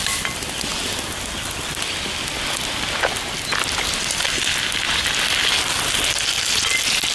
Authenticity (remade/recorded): recorded